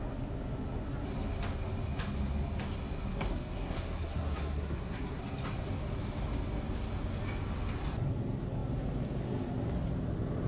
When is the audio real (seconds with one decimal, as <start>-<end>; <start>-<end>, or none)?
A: 0.0-3.1; 5.2-10.5